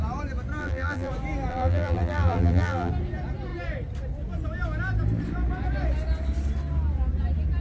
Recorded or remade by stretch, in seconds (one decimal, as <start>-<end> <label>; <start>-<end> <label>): 0.0-0.6 recorded; 0.6-1.1 remade; 1.1-1.5 recorded; 1.5-2.9 remade; 2.9-7.6 recorded